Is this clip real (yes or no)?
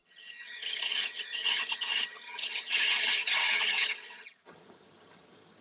no